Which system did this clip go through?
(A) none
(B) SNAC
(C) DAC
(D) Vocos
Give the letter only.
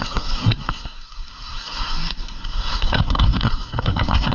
B